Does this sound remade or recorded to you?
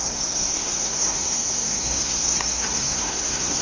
remade